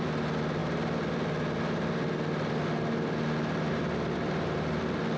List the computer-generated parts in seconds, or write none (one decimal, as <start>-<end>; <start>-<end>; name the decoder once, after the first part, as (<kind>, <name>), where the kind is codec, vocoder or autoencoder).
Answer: none